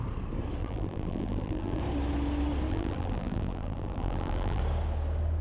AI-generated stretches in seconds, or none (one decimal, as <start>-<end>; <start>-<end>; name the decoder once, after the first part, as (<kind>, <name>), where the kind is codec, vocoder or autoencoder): 0.6-1.8 (vocoder, BigVGAN v2); 2.7-4.6